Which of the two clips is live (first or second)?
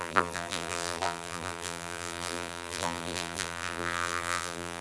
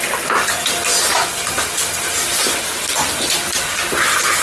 second